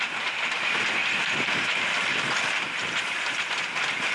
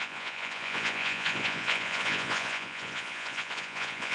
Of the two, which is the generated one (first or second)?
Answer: second